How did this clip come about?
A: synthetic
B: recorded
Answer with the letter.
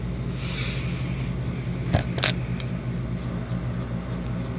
B